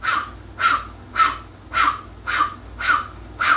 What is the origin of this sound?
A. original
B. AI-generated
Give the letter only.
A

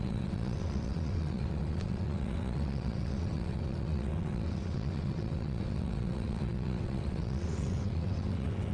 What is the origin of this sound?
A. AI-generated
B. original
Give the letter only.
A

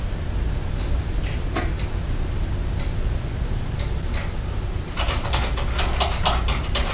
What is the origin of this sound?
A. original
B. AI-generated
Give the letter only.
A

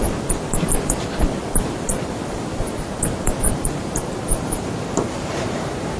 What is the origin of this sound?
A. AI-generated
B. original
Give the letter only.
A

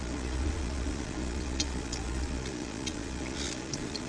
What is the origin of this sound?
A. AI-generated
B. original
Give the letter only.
A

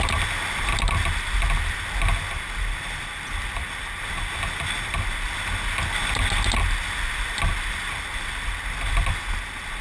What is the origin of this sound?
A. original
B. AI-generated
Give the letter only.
A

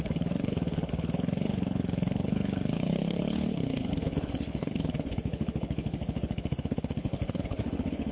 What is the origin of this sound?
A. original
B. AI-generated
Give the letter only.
B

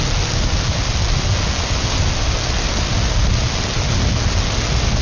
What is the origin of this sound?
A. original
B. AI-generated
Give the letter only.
A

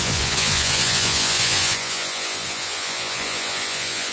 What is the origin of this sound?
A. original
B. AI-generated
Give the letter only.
B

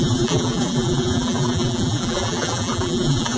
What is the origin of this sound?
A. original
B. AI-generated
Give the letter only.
B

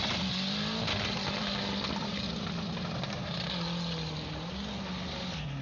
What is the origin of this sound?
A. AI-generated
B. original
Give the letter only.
B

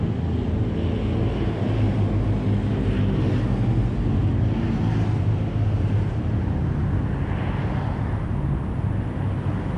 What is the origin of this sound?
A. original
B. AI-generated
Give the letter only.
A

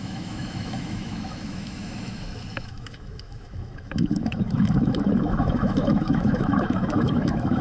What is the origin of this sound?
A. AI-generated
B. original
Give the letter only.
A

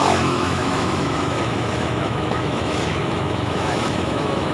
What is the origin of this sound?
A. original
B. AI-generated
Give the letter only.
B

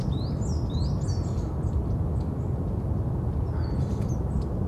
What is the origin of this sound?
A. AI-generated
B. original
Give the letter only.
B